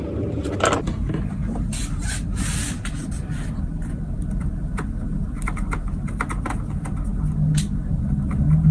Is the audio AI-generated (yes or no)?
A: no